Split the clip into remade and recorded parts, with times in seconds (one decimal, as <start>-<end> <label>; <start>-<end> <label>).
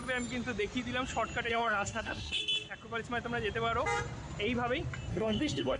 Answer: 0.0-1.5 recorded; 1.5-2.4 remade; 2.4-5.1 recorded; 5.1-5.8 remade